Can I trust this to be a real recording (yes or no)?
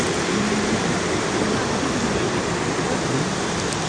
yes